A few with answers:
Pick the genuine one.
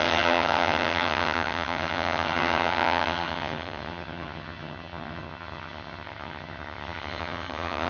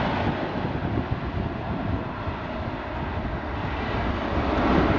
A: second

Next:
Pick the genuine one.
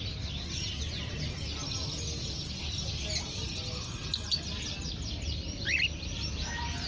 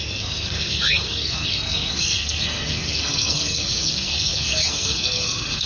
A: first